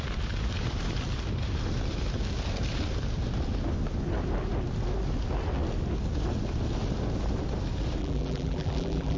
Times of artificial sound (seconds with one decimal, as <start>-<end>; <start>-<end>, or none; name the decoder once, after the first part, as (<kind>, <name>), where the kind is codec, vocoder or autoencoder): 8.0-9.2 (vocoder, BigVGAN v2)